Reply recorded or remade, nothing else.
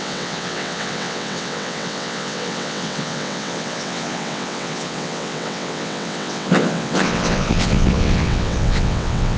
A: remade